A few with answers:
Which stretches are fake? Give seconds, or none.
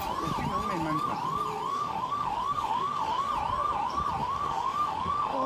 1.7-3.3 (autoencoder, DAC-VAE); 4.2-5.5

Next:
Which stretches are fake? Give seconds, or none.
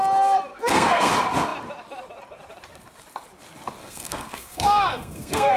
0.5-1.1 (codec, SNAC); 3.8-5.6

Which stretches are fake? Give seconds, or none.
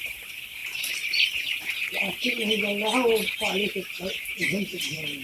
0.0-0.6 (vocoder, BigVGAN v2); 3.7-5.2